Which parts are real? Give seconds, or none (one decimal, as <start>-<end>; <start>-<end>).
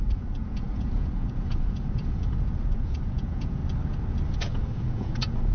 3.6-4.4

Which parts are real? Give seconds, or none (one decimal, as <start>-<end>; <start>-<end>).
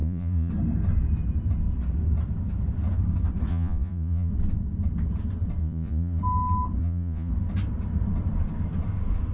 0.5-3.5; 4.3-5.6; 6.2-6.8; 7.3-9.3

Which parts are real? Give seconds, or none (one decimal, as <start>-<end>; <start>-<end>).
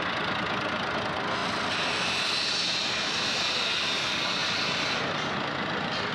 0.0-6.1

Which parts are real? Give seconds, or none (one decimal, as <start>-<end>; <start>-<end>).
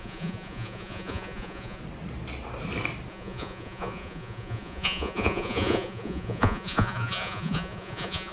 1.8-3.1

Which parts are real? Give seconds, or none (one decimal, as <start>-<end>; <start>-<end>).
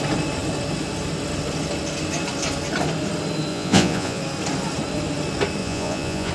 0.0-3.5; 4.2-5.6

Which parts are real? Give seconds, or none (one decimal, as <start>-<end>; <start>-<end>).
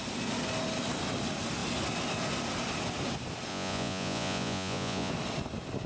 0.0-3.5; 5.1-5.9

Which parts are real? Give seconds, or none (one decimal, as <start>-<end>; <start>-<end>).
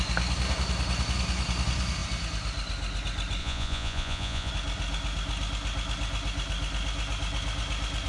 0.0-3.4; 4.5-8.1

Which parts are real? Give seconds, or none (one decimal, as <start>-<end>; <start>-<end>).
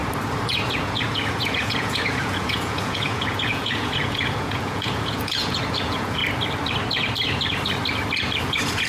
0.0-0.7; 6.2-8.4